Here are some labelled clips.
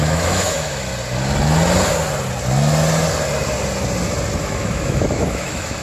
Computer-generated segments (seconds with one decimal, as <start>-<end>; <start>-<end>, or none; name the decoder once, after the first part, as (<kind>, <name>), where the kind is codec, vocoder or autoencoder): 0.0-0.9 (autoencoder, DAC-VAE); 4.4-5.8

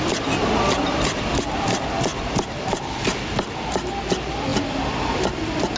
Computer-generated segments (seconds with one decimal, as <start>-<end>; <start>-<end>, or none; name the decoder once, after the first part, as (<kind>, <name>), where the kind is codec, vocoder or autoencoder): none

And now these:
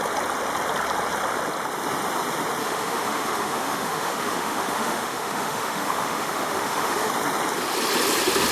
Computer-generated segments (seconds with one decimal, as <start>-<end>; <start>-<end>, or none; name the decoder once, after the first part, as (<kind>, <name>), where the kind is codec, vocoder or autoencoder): 2.6-7.1 (autoencoder, DAC-VAE)